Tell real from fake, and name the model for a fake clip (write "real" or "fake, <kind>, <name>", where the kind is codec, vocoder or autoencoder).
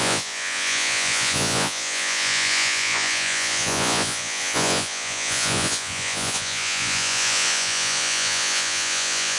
fake, vocoder, Vocos